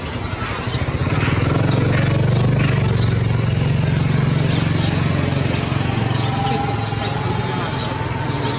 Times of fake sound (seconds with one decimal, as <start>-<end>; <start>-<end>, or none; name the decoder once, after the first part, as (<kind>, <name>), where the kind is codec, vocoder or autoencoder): none